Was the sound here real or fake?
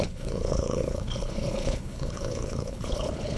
fake